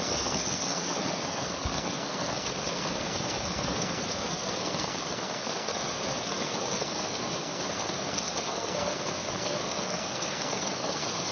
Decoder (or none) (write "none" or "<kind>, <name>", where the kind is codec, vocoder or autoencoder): codec, SNAC